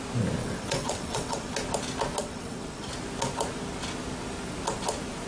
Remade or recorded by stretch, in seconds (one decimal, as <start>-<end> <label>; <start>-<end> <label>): 0.0-0.4 recorded; 0.4-1.5 remade; 1.5-2.2 recorded; 2.2-2.9 remade; 2.9-5.3 recorded